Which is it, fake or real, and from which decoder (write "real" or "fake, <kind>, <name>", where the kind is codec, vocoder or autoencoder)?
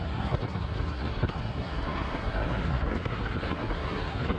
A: fake, codec, SNAC